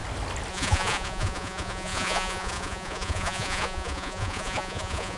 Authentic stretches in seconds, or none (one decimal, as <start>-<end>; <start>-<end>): 0.0-0.5